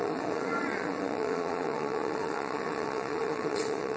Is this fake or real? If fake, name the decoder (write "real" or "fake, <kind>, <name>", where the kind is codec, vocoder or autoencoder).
fake, vocoder, WaveNeXt